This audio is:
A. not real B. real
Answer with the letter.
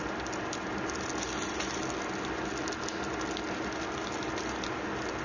B